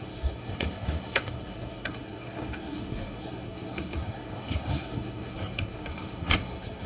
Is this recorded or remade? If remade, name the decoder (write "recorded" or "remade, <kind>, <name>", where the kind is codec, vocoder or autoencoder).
remade, codec, SNAC